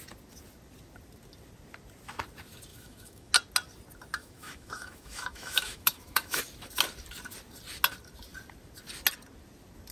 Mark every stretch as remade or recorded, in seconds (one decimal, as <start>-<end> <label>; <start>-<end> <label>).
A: 0.0-2.7 recorded; 2.7-3.3 remade; 3.3-4.2 recorded; 4.2-6.4 remade; 6.4-9.9 recorded